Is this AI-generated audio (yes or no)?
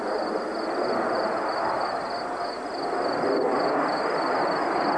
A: no